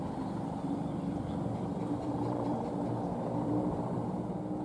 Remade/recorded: remade